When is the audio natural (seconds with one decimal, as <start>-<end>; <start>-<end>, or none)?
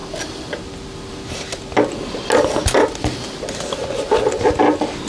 0.0-5.1